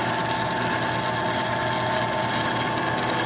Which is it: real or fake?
real